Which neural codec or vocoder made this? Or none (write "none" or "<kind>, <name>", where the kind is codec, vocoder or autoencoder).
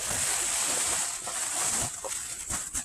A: vocoder, BigVGAN v2